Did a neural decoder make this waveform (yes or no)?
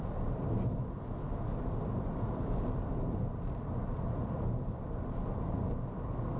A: yes